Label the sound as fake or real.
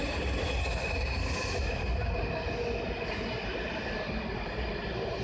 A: real